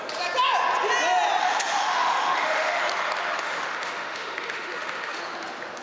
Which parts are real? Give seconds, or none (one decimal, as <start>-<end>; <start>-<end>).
0.0-1.4; 2.8-3.3; 5.2-5.8